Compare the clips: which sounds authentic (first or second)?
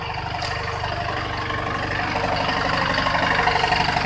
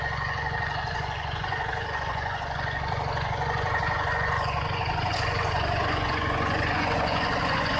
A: first